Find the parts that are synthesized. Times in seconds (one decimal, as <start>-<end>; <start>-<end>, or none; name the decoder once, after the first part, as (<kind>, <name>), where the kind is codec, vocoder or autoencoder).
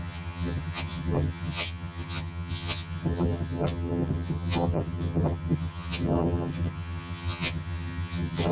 0.0-8.5 (vocoder, HiFi-GAN)